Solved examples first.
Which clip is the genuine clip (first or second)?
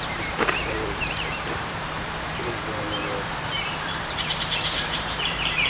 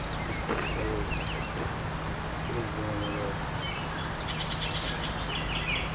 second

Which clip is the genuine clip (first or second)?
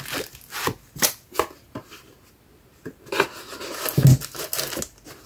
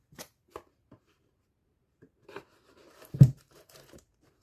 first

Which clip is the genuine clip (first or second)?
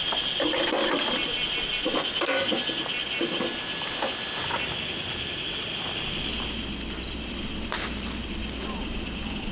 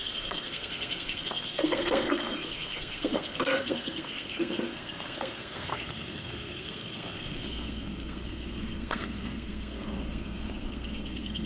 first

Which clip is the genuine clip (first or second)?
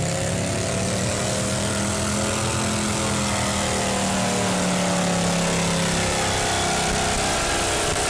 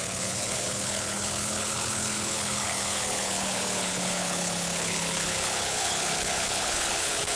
first